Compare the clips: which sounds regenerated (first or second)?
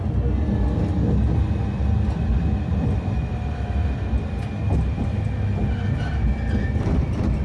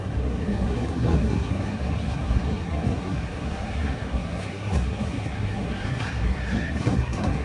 second